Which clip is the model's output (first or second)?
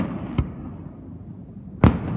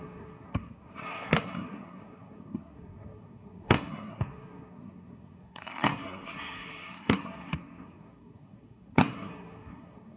second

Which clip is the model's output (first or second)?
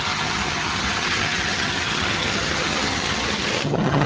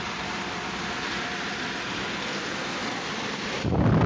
first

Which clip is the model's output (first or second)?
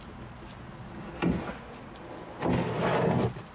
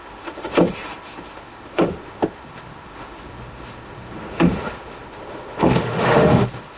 second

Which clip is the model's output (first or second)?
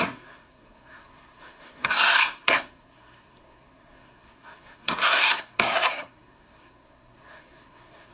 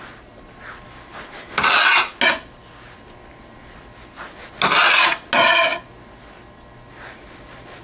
first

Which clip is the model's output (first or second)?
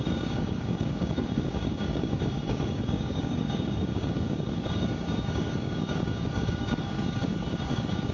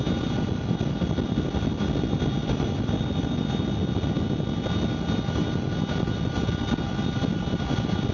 first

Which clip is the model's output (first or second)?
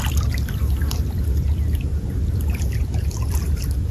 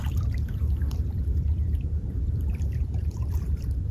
second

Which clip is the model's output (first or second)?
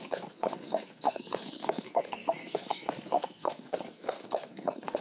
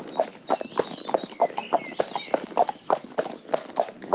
first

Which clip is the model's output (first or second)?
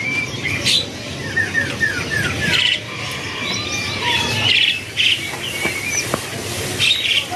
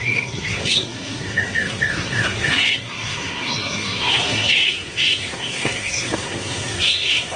second